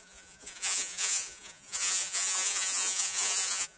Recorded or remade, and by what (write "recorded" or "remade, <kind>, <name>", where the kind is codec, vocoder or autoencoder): remade, vocoder, Vocos